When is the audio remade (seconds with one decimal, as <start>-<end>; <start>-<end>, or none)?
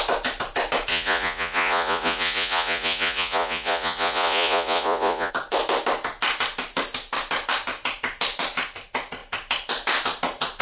0.9-5.3